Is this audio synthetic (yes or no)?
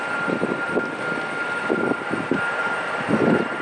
no